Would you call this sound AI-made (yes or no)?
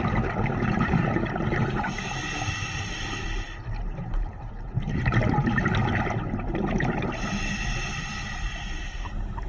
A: no